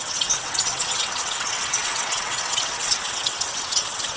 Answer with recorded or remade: remade